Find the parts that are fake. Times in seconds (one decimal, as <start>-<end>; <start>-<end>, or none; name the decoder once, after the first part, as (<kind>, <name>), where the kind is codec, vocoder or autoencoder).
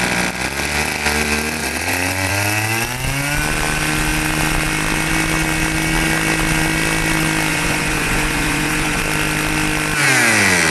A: 1.6-2.3 (vocoder, Vocos); 7.5-9.0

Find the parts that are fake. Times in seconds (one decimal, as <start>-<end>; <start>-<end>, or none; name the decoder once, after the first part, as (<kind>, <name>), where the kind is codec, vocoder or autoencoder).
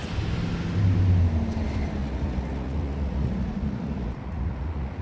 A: 2.0-5.0 (vocoder, Vocos)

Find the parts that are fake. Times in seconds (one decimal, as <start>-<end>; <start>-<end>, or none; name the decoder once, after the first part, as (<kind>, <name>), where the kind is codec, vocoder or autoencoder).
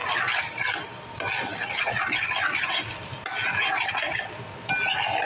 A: none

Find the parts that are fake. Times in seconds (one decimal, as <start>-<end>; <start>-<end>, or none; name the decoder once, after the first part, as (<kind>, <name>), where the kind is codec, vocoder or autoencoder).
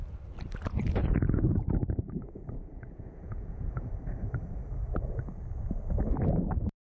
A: 1.0-3.9 (vocoder, Vocos)